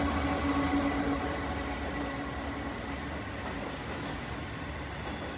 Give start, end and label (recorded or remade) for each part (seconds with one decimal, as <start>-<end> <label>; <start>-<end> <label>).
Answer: 0.0-3.8 recorded; 3.8-4.3 remade; 4.3-5.4 recorded